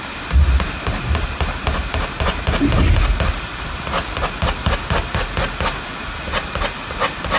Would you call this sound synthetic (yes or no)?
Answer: no